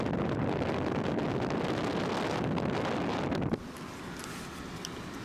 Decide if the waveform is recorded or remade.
recorded